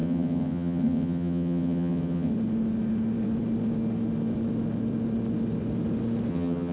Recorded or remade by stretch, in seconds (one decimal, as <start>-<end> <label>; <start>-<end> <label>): 0.0-2.3 remade; 2.3-6.3 recorded; 6.3-6.7 remade